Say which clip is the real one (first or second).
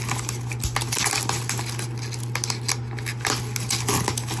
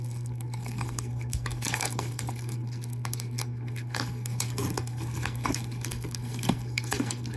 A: first